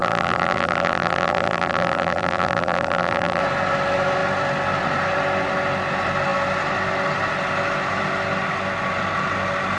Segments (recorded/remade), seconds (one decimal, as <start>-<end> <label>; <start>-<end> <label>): 0.0-3.4 remade; 3.4-9.8 recorded